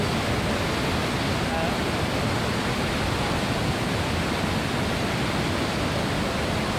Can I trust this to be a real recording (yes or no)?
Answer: yes